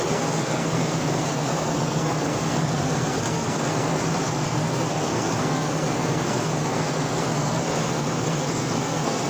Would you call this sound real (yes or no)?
no